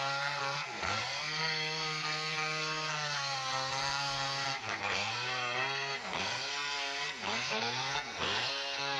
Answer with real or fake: fake